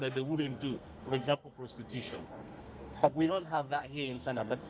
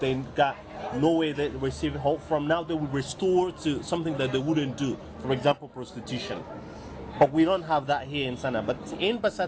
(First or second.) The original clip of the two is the second